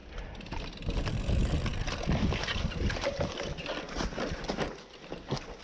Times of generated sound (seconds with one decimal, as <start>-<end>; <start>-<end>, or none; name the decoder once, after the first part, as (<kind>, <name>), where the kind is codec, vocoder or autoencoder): none